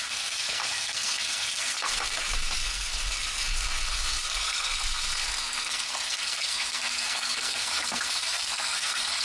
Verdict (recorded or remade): remade